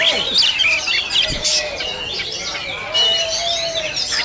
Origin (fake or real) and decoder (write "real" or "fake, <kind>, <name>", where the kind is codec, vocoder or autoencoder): real